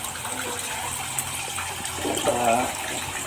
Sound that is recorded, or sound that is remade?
recorded